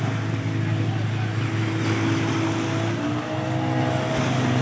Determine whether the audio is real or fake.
real